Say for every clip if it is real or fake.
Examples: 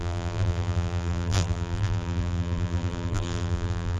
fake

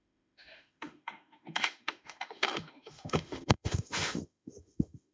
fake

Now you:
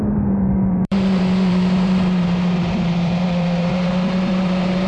fake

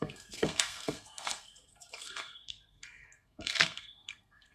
fake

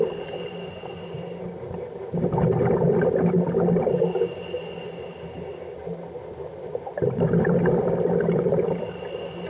real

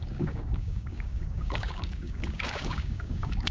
fake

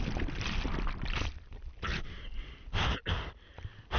real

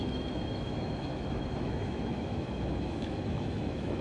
fake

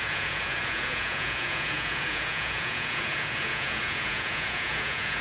fake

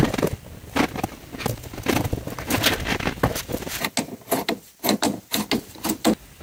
real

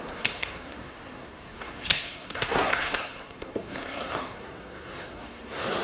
fake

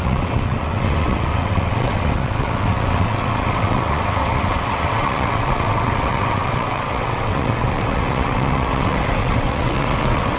fake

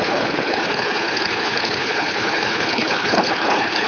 fake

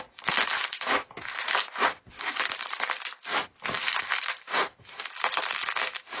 real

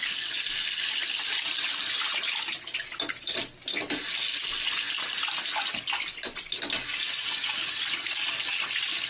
real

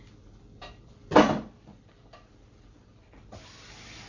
fake